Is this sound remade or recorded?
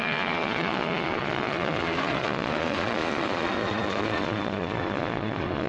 remade